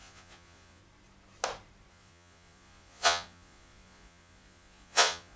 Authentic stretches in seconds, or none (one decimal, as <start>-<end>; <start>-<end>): 0.8-1.9